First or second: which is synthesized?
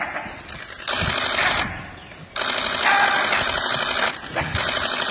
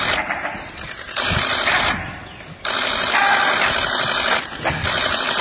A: second